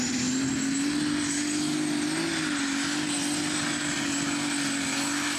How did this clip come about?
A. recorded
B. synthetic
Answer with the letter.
A